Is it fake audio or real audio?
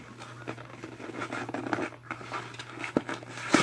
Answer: real